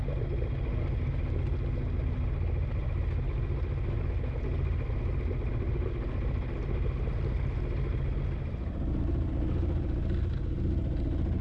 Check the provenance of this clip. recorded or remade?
recorded